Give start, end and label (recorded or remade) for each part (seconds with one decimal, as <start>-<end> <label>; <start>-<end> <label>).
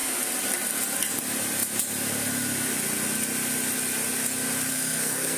0.0-4.7 recorded; 4.7-5.4 remade